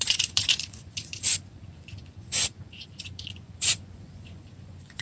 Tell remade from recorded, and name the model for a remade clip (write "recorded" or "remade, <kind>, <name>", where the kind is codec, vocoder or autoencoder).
remade, vocoder, Vocos